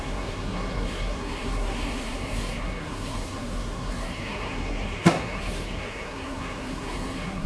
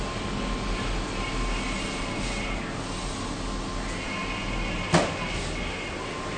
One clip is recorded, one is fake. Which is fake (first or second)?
first